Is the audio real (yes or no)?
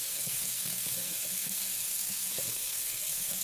no